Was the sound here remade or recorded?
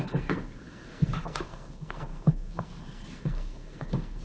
remade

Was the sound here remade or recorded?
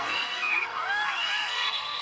remade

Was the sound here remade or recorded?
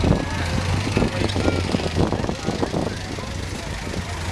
recorded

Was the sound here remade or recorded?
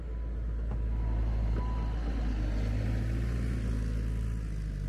recorded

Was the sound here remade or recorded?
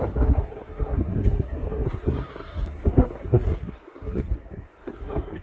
remade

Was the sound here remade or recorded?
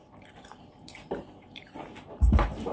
remade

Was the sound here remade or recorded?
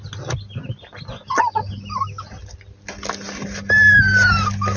recorded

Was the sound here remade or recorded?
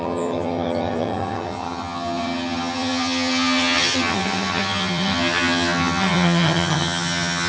remade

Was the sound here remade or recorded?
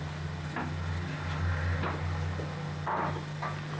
recorded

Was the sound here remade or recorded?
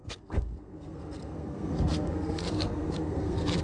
remade